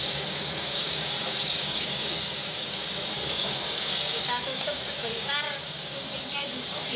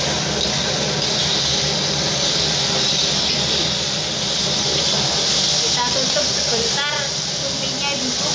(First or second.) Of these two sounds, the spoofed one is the first